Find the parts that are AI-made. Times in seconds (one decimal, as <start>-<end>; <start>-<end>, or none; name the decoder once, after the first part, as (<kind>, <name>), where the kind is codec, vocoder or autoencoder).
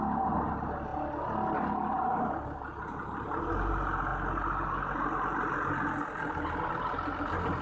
none